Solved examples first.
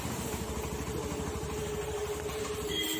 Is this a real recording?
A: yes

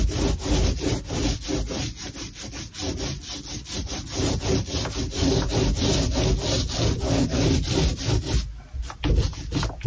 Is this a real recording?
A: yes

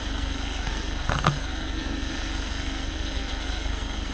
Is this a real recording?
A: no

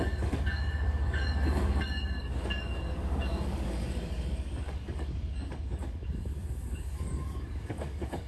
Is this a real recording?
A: no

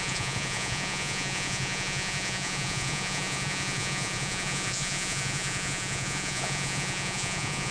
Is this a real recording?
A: no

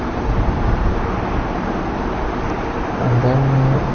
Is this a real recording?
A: yes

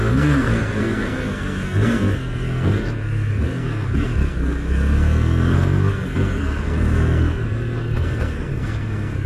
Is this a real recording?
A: no